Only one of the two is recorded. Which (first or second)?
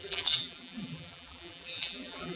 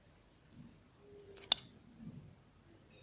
second